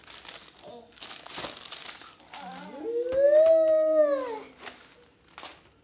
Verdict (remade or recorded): recorded